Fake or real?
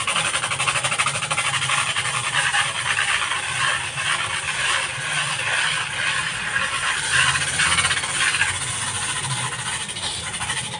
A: fake